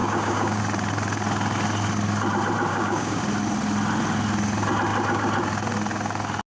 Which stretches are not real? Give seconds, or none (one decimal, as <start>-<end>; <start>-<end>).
0.0-0.6; 2.7-3.2